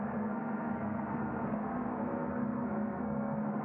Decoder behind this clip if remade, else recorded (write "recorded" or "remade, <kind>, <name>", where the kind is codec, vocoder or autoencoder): remade, codec, SNAC